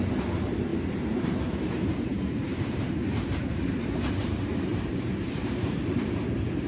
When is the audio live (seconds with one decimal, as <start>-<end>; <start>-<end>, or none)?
none